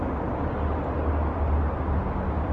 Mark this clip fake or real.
real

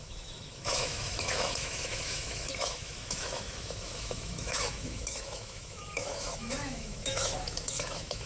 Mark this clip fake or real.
fake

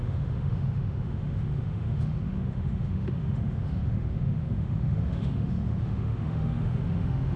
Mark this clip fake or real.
fake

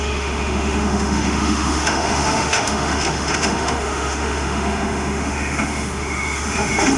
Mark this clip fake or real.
fake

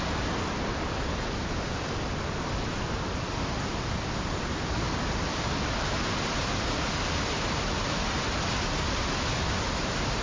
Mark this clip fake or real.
real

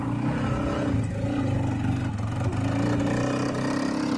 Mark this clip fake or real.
real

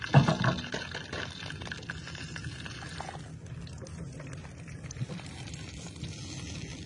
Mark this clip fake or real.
real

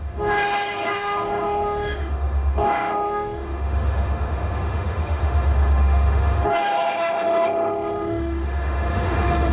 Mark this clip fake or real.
fake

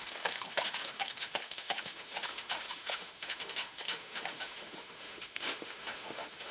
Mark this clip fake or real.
fake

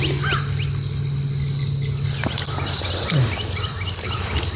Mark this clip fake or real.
real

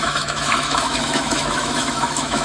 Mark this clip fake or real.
fake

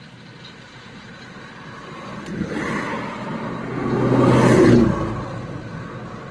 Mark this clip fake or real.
real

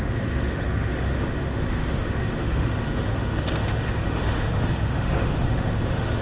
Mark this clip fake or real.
fake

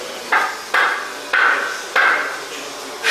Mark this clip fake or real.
real